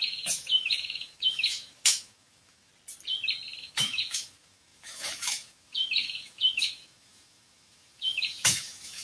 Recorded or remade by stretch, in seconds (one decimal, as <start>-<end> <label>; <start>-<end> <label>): 0.0-2.7 remade; 2.7-3.6 recorded; 3.6-9.0 remade